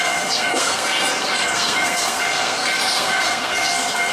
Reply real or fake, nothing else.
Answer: fake